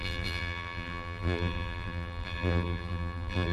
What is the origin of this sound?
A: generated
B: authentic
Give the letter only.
A